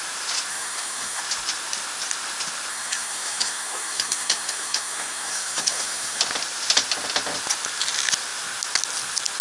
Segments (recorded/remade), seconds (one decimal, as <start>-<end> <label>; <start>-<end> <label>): 0.0-0.5 recorded; 0.5-1.2 remade; 1.2-2.7 recorded; 2.7-6.2 remade; 6.2-9.4 recorded